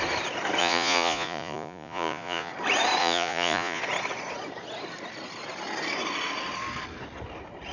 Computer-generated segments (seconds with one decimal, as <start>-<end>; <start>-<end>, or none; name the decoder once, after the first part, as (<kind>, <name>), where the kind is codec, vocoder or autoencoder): 0.6-2.5 (vocoder, Vocos); 3.0-3.8